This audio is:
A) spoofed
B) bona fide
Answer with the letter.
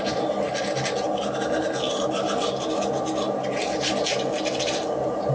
B